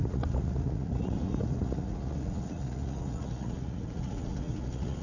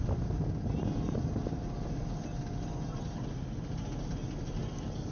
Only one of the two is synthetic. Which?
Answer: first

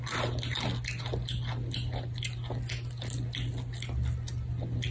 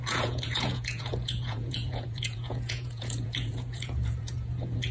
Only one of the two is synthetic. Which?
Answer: second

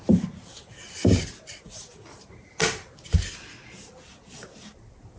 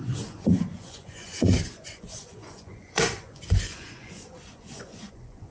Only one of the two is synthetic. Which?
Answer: second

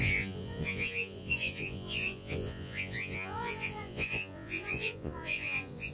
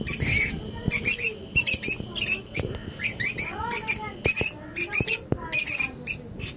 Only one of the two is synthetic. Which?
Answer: first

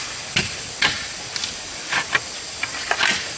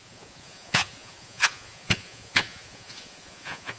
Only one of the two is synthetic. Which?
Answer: second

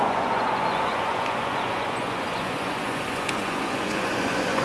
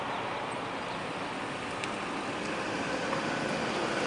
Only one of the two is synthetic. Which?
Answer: first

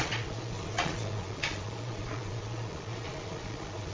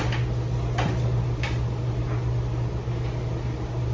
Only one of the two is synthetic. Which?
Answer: first